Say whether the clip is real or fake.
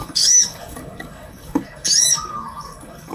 fake